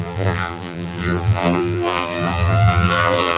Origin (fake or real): fake